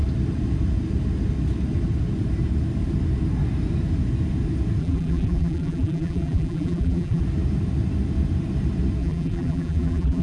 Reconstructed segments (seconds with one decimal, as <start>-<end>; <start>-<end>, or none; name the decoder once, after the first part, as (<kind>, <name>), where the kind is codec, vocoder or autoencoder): 4.8-7.2 (vocoder, BigVGAN v2); 9.0-10.2